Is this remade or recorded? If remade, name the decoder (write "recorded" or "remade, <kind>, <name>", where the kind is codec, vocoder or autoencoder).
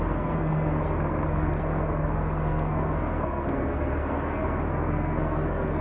remade, codec, SNAC